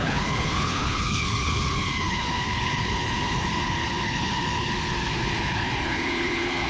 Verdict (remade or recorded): remade